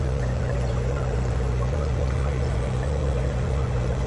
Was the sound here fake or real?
fake